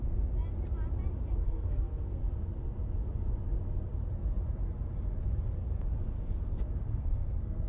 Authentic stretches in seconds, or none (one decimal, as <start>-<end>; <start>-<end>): 0.0-1.4; 2.2-6.5